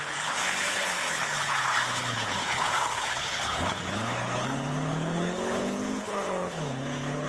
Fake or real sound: fake